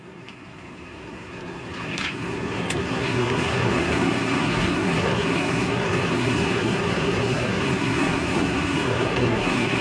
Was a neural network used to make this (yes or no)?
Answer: yes